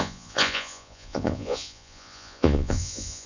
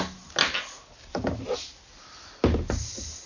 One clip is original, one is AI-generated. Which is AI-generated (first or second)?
first